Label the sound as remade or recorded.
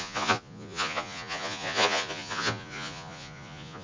remade